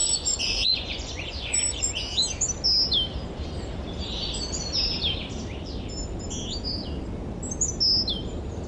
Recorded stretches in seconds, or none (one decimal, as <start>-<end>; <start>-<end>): 2.1-8.7

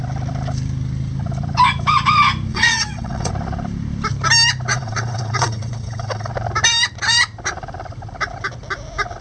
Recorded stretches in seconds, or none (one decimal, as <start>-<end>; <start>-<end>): 0.0-2.5; 3.3-4.7; 6.3-9.2

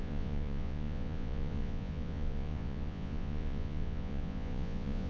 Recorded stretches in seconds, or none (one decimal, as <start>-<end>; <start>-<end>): none

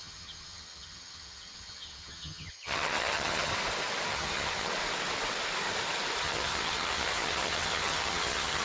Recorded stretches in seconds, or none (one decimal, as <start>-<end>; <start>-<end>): 3.5-4.1; 4.7-6.2

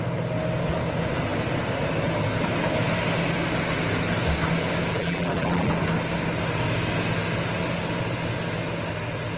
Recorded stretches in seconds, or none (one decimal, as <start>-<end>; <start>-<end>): 0.0-4.9; 5.7-9.4

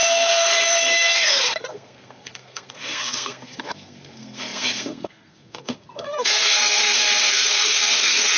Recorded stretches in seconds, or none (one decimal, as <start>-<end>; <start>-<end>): none